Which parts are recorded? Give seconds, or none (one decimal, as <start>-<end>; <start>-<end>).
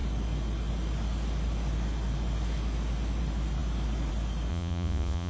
0.0-4.5